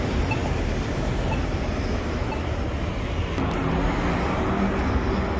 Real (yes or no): yes